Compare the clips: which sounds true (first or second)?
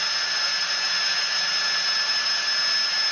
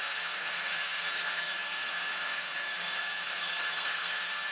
first